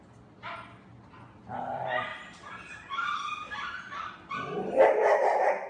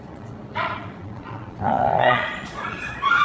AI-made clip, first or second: second